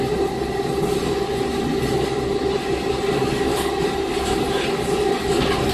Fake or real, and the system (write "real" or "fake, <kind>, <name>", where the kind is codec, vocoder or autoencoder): real